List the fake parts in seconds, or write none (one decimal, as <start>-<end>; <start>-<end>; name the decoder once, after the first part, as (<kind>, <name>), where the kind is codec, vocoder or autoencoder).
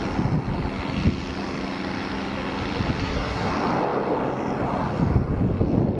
3.0-3.5 (codec, SNAC)